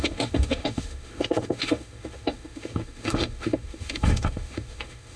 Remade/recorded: remade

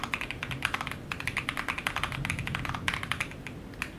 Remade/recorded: recorded